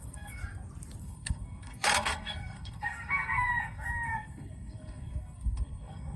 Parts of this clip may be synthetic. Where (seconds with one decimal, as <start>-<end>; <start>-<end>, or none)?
0.0-0.4; 1.0-6.2

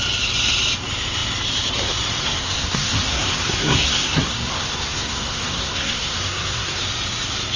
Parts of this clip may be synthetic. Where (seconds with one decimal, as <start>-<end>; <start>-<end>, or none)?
2.2-6.8

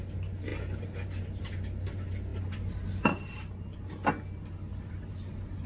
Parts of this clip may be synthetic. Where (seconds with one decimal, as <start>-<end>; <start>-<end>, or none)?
none

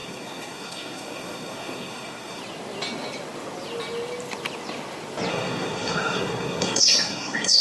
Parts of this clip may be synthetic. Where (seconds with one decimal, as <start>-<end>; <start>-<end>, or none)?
0.0-2.4; 5.3-7.6

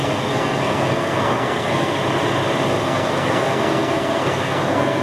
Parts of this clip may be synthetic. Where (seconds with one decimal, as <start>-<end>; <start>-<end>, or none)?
0.0-2.0; 2.8-5.0